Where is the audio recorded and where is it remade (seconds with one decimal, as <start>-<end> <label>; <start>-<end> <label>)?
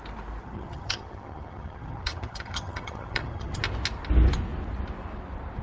0.0-0.4 recorded; 0.4-3.6 remade; 3.6-5.6 recorded